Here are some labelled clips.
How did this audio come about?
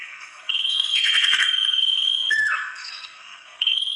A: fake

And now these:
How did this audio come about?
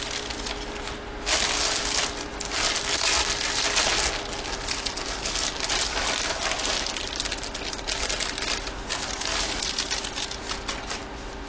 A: real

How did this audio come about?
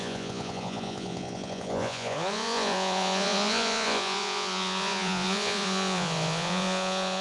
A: fake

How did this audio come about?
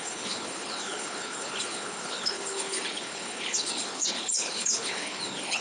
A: fake